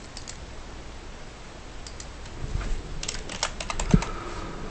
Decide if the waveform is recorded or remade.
recorded